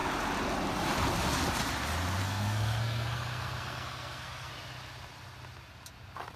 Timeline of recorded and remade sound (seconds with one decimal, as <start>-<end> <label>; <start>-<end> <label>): 0.0-2.2 recorded; 2.2-4.5 remade; 4.5-6.4 recorded